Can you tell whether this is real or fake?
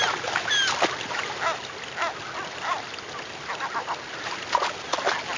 real